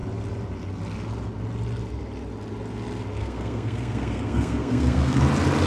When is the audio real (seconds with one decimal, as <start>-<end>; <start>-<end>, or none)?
0.0-3.2; 5.2-5.7